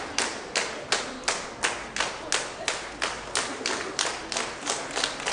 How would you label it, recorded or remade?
recorded